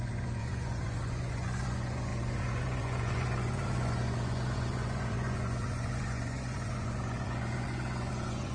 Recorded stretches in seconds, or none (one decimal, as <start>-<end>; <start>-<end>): none